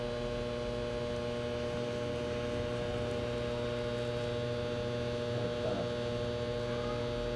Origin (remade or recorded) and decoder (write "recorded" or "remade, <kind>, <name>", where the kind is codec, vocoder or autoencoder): recorded